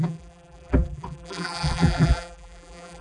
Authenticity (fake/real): fake